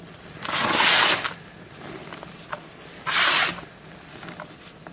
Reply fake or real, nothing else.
real